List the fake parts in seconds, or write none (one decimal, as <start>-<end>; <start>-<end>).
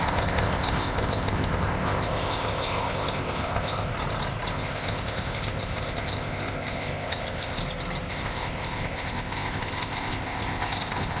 0.0-3.9; 4.5-7.6; 8.1-11.2